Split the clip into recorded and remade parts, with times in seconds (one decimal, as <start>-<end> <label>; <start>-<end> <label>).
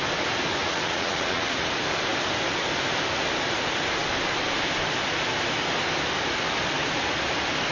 0.0-0.6 recorded; 0.6-1.7 remade; 1.7-7.7 recorded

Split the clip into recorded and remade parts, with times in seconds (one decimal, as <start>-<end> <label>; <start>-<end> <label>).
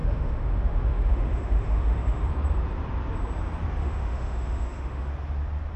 0.0-2.3 remade; 2.3-3.8 recorded; 3.8-5.1 remade; 5.1-5.8 recorded